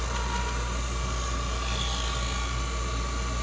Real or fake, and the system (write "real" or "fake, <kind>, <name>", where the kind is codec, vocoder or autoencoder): real